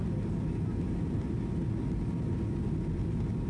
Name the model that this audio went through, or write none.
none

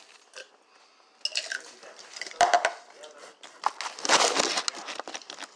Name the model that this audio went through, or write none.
none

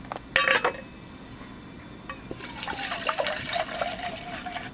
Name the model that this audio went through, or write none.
none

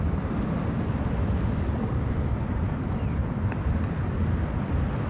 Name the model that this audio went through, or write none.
none